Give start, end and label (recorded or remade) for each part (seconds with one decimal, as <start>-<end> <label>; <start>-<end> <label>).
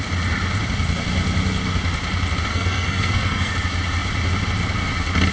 0.0-2.5 recorded; 2.5-3.5 remade; 3.5-5.3 recorded